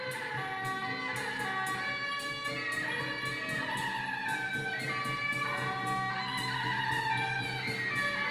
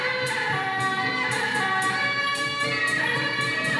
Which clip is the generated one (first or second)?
second